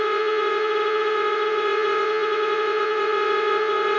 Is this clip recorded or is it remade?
remade